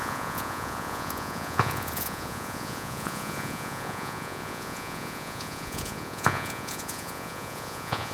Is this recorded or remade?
remade